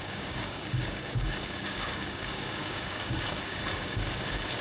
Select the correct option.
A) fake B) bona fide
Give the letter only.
A